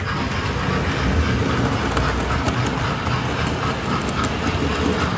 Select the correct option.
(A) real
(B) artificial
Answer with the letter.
A